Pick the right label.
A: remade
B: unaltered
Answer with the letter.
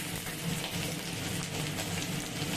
B